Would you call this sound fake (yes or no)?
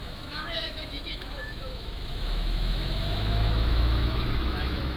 yes